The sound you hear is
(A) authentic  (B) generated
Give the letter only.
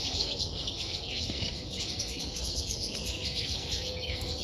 B